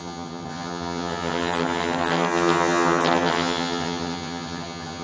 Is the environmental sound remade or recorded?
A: remade